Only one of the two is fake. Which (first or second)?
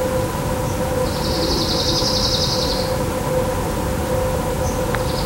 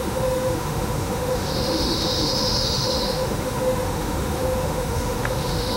second